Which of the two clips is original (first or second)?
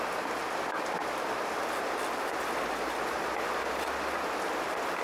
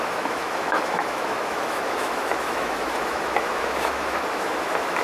first